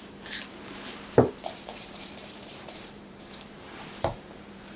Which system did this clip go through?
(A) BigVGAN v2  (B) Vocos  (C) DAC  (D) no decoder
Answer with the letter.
A